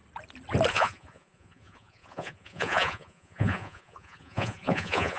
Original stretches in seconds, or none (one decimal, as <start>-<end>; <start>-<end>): 0.0-0.7